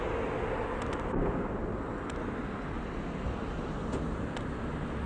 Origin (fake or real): real